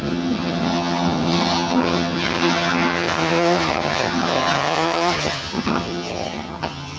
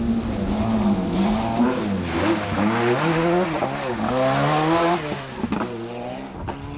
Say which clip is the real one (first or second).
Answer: second